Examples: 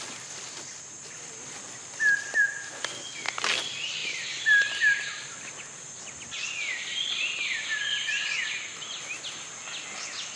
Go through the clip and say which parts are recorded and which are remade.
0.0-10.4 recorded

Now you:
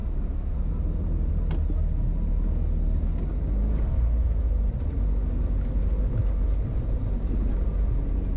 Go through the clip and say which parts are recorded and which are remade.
0.0-8.4 recorded

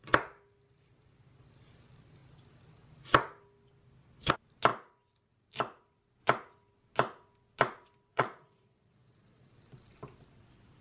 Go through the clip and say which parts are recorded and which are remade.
0.0-8.1 recorded; 8.1-9.5 remade; 9.5-10.8 recorded

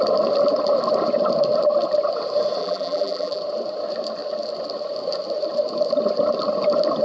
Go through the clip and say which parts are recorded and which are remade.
0.0-2.6 recorded; 2.6-3.4 remade; 3.4-7.0 recorded

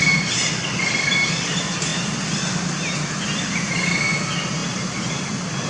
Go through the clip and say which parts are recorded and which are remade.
0.0-5.7 recorded